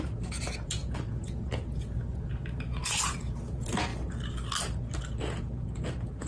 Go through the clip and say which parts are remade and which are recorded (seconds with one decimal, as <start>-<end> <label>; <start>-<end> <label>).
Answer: 0.0-3.9 remade; 3.9-5.2 recorded; 5.2-6.3 remade